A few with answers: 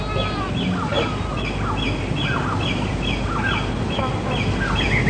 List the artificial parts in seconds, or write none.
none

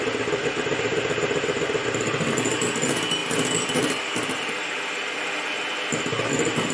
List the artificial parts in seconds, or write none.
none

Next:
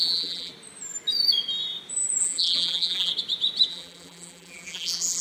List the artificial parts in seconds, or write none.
0.0-0.5 (vocoder, BigVGAN v2); 2.2-3.1; 3.7-5.2